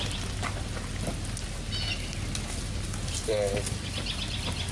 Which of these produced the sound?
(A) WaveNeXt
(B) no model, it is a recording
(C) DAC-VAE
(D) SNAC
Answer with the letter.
B